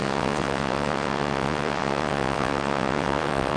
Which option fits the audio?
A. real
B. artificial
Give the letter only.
B